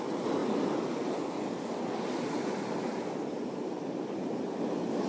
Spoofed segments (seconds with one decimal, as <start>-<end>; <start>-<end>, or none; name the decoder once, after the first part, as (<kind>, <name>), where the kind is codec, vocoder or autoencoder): none